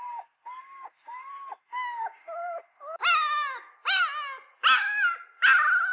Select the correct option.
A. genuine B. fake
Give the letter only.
A